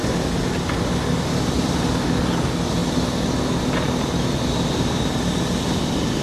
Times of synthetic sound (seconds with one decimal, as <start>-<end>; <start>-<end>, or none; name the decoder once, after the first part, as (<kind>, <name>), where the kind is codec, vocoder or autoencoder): none